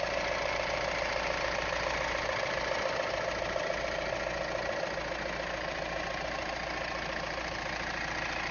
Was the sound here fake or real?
real